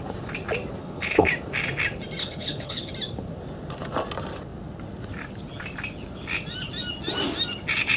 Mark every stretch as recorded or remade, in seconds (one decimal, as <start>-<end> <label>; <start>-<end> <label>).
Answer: 0.0-0.8 recorded; 0.8-1.3 remade; 1.3-2.2 recorded; 2.2-2.9 remade; 2.9-8.0 recorded